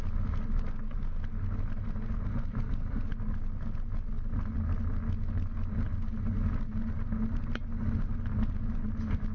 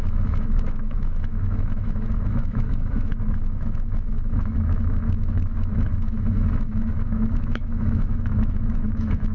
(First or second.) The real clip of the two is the first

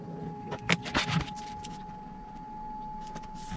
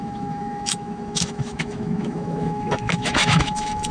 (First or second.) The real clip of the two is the first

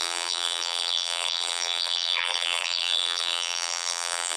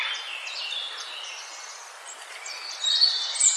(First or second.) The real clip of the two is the second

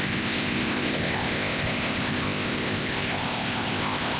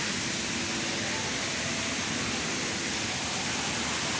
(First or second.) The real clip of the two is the second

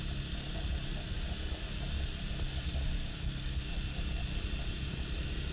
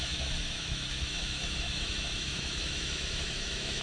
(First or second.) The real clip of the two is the first